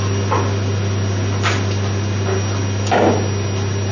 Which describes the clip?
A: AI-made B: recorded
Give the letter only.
B